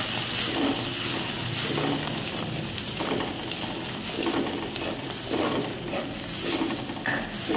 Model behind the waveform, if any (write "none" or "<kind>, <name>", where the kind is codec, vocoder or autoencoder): none